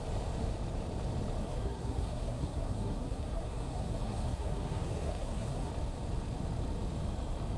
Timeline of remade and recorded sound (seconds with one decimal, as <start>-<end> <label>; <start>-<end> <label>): 0.0-1.4 recorded; 1.4-5.7 remade; 5.7-7.6 recorded